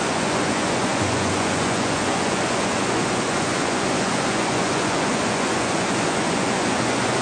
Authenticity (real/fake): fake